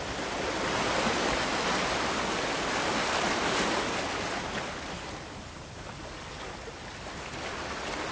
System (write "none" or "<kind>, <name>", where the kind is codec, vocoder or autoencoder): none